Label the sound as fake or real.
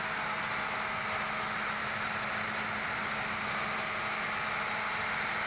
real